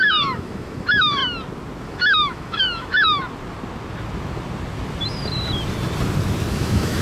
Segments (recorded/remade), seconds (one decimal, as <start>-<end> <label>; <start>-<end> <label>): 0.0-1.2 remade; 1.2-1.8 recorded; 1.8-3.2 remade; 3.2-6.5 recorded; 6.5-7.0 remade